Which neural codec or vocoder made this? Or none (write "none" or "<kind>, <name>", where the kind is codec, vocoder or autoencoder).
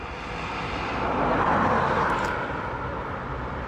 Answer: vocoder, BigVGAN v2